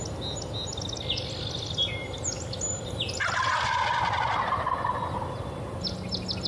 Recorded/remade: recorded